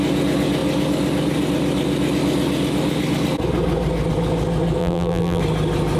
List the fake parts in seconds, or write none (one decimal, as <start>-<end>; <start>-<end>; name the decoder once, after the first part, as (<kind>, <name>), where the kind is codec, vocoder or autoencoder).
4.8-5.4 (vocoder, BigVGAN v2)